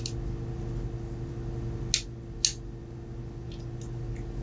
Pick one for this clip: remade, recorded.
recorded